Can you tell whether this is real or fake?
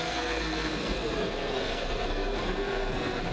fake